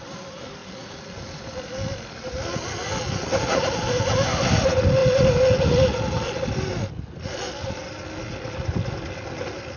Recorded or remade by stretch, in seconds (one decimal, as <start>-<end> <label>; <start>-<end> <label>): 0.0-9.8 recorded